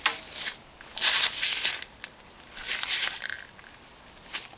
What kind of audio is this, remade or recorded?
recorded